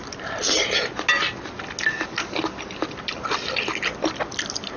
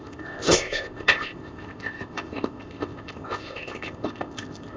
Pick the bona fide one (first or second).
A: first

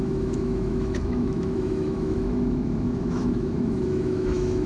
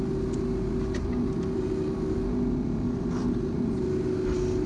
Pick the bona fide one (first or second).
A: second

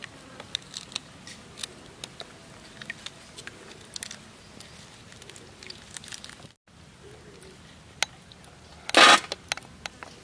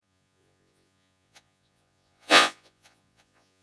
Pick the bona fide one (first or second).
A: first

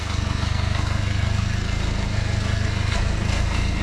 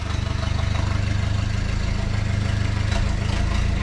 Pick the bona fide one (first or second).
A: second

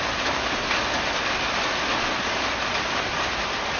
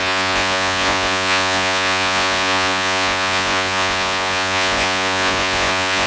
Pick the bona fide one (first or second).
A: first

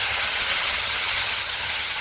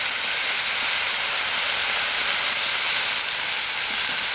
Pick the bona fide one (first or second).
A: second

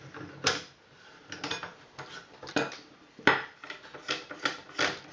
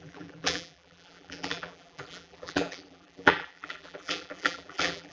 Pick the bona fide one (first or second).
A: first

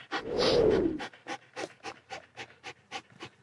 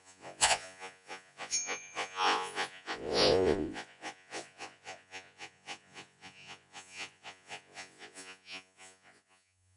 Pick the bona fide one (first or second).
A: first